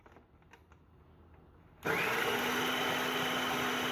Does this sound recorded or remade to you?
recorded